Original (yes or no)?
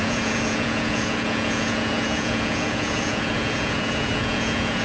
no